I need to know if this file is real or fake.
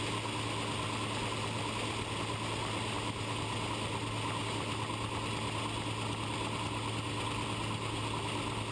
real